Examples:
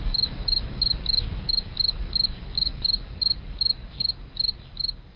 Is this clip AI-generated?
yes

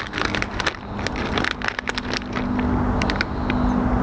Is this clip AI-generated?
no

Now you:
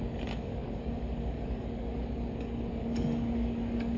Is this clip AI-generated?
yes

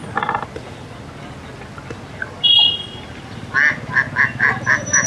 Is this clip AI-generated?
no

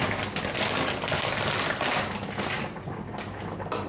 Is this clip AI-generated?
no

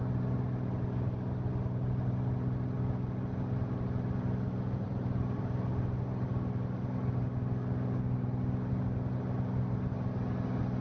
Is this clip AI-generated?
no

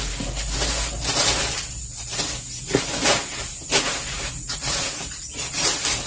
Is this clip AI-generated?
no